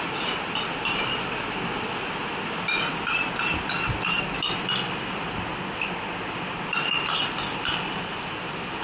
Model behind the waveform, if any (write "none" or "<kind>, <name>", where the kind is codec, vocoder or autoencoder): none